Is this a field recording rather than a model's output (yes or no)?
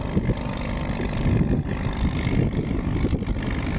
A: yes